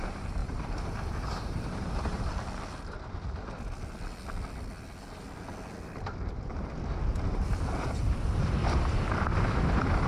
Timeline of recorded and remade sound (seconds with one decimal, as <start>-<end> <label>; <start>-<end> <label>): 0.0-2.3 remade; 2.3-7.3 recorded; 7.3-10.1 remade